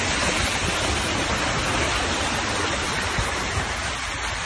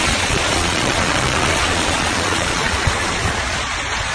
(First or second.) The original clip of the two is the first